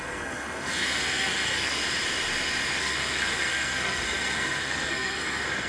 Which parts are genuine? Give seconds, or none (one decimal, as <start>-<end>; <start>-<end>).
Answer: 1.8-2.8